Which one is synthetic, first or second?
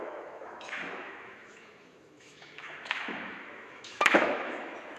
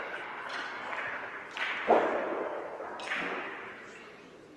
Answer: first